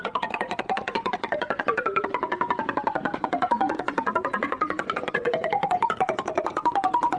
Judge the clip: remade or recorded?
remade